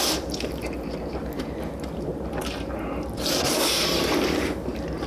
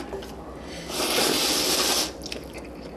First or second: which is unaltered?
second